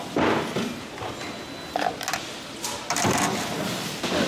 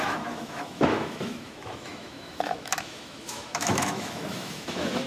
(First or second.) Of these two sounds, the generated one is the second